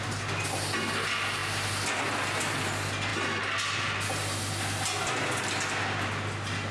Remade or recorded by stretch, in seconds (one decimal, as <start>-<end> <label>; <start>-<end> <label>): 0.0-6.7 recorded